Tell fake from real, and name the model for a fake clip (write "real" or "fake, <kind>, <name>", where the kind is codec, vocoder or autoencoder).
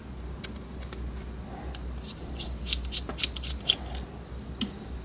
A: real